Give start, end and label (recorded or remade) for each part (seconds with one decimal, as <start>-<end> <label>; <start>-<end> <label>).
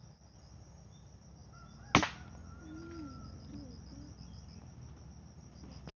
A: 0.0-6.0 recorded